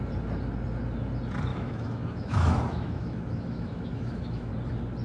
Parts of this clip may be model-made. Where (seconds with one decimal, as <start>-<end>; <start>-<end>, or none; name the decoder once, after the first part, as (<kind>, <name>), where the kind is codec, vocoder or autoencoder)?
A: 1.5-4.5 (autoencoder, DAC-VAE)